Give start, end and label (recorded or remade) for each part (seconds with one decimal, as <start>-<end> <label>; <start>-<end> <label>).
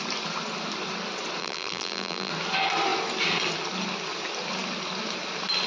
0.0-1.4 recorded; 1.4-2.3 remade; 2.3-5.7 recorded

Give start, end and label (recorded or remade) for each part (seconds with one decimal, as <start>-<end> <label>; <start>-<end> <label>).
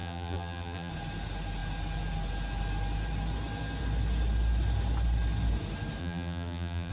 0.0-0.9 remade; 0.9-6.0 recorded; 6.0-6.9 remade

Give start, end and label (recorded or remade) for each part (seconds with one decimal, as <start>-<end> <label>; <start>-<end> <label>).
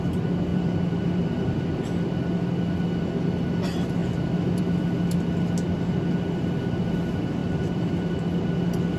0.0-0.5 recorded; 0.5-1.9 remade; 1.9-4.0 recorded; 4.0-4.6 remade; 4.6-7.4 recorded; 7.4-8.5 remade; 8.5-9.0 recorded